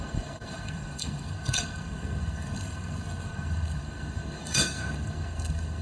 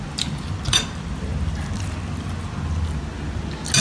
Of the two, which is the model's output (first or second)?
first